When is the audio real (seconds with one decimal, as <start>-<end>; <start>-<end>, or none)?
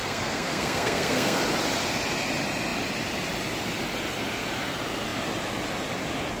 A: 1.4-6.4